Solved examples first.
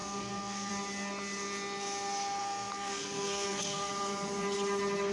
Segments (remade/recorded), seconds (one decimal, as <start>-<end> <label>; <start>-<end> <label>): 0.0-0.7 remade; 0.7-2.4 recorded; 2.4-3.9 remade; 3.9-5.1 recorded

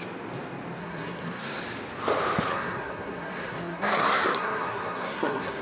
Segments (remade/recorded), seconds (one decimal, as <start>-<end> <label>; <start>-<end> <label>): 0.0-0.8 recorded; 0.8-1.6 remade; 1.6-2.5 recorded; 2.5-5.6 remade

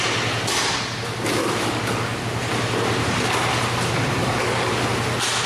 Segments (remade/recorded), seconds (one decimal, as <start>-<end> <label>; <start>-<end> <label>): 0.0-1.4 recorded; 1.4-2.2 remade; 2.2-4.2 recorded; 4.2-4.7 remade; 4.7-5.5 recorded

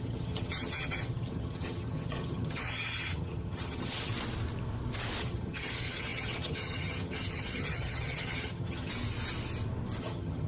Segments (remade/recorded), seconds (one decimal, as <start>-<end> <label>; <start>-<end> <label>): 0.0-4.1 remade; 4.1-5.2 recorded; 5.2-8.9 remade; 8.9-10.0 recorded; 10.0-10.5 remade

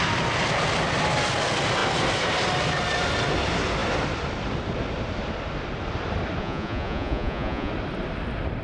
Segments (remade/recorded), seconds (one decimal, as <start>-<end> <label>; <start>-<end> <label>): 0.0-6.4 recorded; 6.4-7.7 remade; 7.7-8.6 recorded

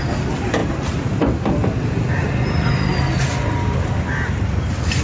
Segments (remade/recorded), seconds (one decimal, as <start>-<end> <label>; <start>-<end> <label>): 0.0-5.0 recorded